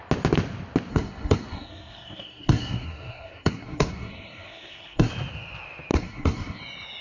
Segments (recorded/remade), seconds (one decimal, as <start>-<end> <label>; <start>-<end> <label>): 0.0-0.9 recorded; 0.9-5.1 remade; 5.1-5.9 recorded; 5.9-6.6 remade; 6.6-7.0 recorded